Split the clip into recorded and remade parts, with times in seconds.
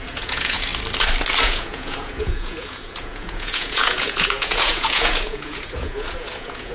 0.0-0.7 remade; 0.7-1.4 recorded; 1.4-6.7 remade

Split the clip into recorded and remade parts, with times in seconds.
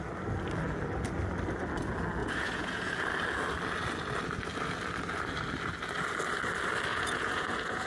0.0-2.2 recorded; 2.2-2.9 remade; 2.9-6.9 recorded; 6.9-7.9 remade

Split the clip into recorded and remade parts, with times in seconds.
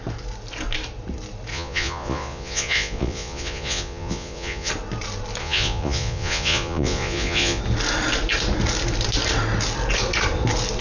0.0-1.5 recorded; 1.5-4.7 remade; 4.7-5.4 recorded; 5.4-7.6 remade; 7.6-10.8 recorded